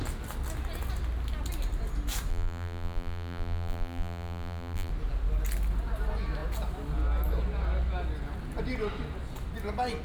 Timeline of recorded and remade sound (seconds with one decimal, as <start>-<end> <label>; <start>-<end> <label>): 0.0-2.3 recorded; 2.3-4.9 remade; 4.9-10.0 recorded